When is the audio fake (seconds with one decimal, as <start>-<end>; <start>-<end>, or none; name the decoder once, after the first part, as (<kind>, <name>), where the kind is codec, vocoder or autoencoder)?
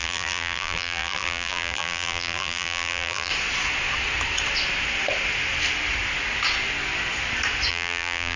0.0-3.3 (vocoder, BigVGAN v2); 7.7-8.4